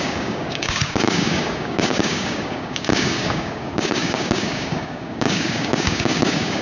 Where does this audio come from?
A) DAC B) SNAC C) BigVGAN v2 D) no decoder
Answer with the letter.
A